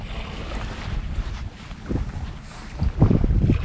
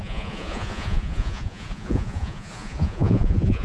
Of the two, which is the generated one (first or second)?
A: second